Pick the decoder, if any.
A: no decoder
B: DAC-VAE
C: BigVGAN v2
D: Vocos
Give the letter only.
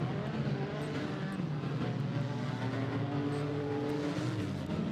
A